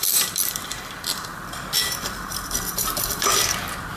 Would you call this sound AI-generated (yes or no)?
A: yes